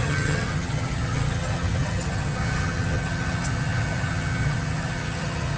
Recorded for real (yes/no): no